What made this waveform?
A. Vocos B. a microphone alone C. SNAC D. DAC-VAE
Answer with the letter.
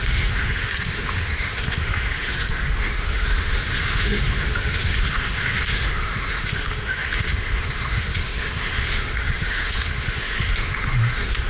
D